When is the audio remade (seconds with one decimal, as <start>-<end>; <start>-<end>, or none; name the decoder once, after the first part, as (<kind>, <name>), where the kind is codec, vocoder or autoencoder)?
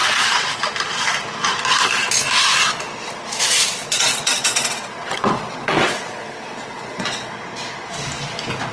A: 0.0-0.5 (vocoder, WaveNeXt); 3.8-7.3